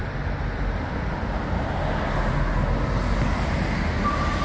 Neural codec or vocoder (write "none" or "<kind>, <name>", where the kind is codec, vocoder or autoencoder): none